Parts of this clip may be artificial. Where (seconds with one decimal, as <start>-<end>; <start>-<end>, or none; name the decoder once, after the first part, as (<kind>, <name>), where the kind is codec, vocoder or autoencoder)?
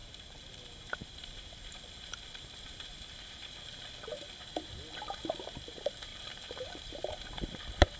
0.0-4.4 (vocoder, BigVGAN v2); 6.1-7.6